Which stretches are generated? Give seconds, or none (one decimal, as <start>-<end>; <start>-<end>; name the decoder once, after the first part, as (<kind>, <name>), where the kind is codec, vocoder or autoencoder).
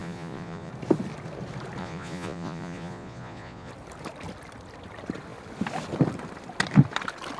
0.0-0.7 (vocoder, Vocos); 1.8-3.7